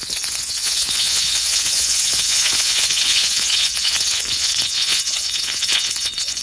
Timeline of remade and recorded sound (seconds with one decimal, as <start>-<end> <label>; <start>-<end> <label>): 0.0-6.4 remade